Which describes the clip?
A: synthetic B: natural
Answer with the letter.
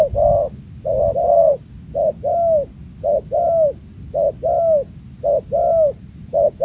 B